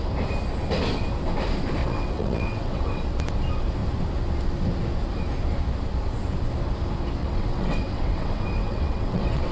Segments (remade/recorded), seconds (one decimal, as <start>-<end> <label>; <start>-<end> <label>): 0.0-1.8 recorded; 1.8-3.0 remade; 3.0-7.2 recorded; 7.2-9.5 remade